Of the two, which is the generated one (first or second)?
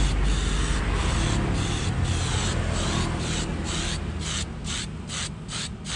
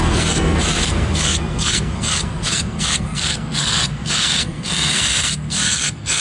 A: second